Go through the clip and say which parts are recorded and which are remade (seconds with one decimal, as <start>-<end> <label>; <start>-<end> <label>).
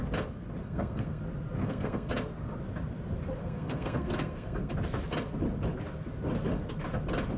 0.0-0.6 recorded; 0.6-1.2 remade; 1.2-1.6 recorded; 1.6-2.1 remade; 2.1-3.4 recorded; 3.4-4.7 remade; 4.7-7.4 recorded